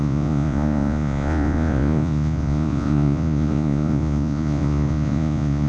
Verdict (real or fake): fake